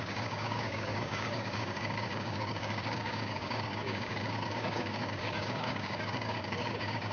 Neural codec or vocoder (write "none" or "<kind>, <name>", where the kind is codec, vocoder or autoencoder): codec, DAC